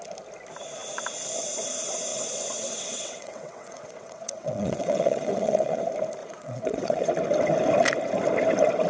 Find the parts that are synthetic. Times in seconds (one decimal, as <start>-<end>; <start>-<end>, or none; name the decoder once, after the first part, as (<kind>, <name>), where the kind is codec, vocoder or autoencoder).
2.1-5.8 (vocoder, WaveNeXt); 6.2-7.1